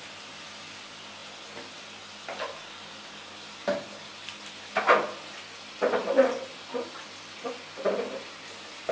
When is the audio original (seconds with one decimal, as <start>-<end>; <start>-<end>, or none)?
0.0-8.9